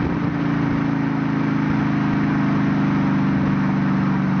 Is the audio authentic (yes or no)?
yes